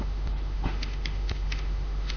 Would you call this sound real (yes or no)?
no